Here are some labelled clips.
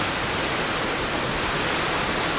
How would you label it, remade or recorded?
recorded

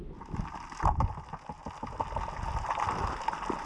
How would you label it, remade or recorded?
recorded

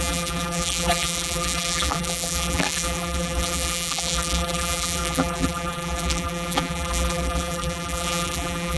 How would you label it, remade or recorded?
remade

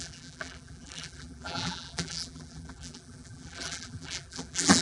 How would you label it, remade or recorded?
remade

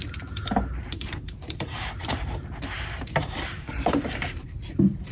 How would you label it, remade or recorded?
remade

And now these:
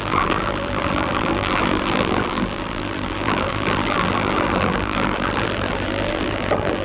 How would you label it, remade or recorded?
remade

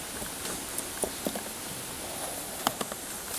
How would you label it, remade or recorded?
recorded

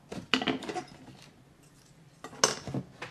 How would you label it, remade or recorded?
recorded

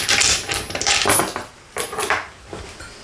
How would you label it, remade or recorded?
recorded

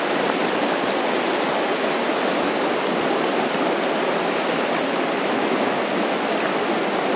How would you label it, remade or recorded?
recorded